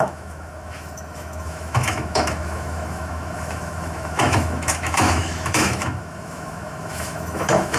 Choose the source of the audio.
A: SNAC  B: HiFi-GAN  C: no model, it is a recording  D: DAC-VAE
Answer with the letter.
D